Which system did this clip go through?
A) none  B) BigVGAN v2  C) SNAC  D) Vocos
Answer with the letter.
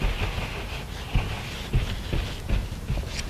A